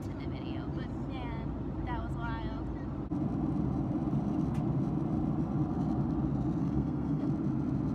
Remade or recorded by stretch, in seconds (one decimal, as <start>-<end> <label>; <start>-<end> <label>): 0.0-6.6 recorded; 6.6-7.3 remade; 7.3-7.9 recorded